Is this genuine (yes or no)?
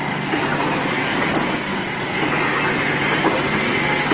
yes